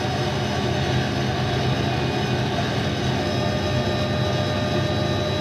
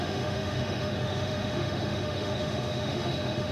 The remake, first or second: second